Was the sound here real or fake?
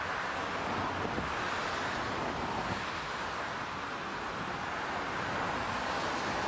real